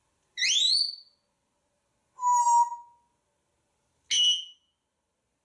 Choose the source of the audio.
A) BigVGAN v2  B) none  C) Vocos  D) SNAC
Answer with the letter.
B